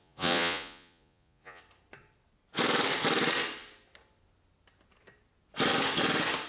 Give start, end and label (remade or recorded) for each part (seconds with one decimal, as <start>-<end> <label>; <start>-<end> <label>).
0.0-1.6 remade; 1.6-6.5 recorded